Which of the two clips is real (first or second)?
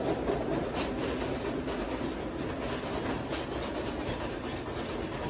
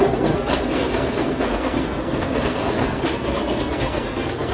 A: first